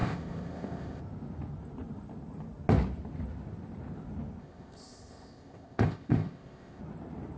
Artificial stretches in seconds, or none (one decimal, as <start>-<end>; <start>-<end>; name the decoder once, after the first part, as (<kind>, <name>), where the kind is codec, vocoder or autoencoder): 0.0-1.0 (codec, ZipCodec); 4.4-6.8